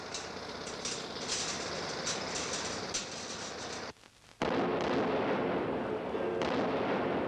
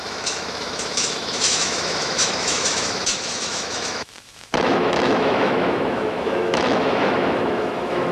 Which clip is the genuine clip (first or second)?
first